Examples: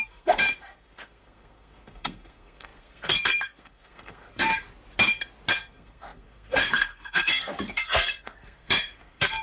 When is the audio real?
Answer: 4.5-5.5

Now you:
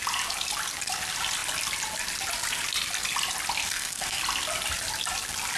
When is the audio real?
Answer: 0.0-3.6; 4.2-5.6

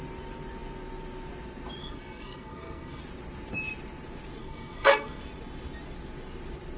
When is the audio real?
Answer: 0.0-1.8; 3.0-4.4; 5.2-6.8

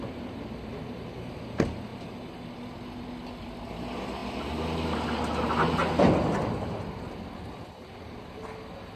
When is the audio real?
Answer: 0.0-9.0

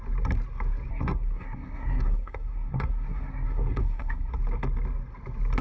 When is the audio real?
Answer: 0.0-0.9; 4.3-5.6

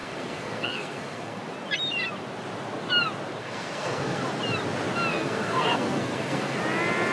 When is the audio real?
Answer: 1.4-3.4; 4.2-5.1; 6.6-7.1

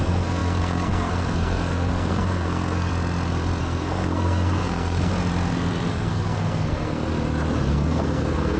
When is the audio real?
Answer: 2.9-3.6; 5.1-5.9; 7.1-7.7

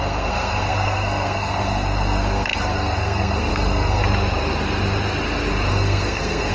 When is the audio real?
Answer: 4.0-5.7